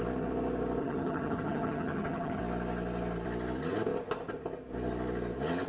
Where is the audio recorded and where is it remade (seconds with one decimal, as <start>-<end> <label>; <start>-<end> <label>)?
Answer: 0.0-0.8 recorded; 0.8-2.4 remade; 2.4-5.7 recorded